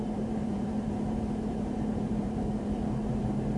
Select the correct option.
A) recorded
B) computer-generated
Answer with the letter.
B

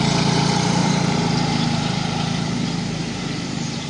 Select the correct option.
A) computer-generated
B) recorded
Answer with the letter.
A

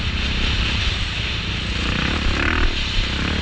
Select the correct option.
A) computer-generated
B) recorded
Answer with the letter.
B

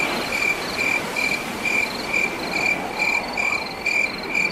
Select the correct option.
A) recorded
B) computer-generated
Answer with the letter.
A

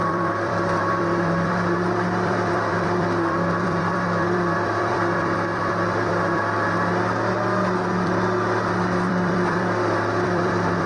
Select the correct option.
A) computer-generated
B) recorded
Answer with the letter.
A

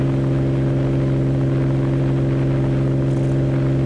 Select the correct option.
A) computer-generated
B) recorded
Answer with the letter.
B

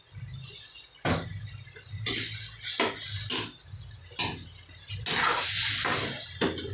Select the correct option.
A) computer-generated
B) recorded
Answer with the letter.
B